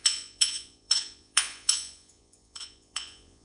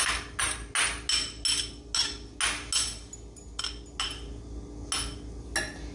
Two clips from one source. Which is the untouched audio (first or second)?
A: second